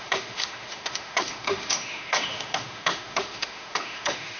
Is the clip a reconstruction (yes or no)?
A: yes